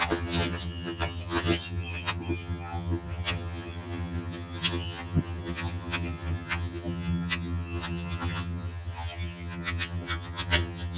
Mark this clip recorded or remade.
remade